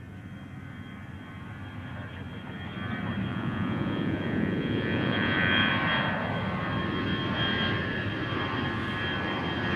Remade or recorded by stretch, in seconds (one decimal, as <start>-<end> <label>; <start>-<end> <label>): 0.0-3.3 recorded; 3.3-5.7 remade; 5.7-9.8 recorded

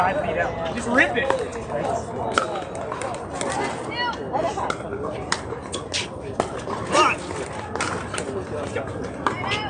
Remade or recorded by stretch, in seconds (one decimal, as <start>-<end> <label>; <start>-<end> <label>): 0.0-9.7 recorded

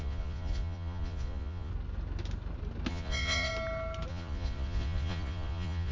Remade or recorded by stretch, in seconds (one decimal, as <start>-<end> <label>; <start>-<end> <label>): 0.0-1.7 remade; 1.7-2.9 recorded; 2.9-3.5 remade; 3.5-4.1 recorded; 4.1-5.9 remade